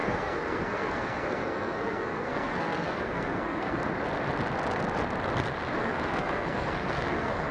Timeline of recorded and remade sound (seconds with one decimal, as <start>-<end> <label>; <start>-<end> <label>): 0.0-3.8 remade; 3.8-5.8 recorded; 5.8-7.5 remade